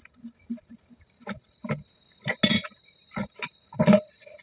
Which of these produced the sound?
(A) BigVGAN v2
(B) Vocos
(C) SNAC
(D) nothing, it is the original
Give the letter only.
D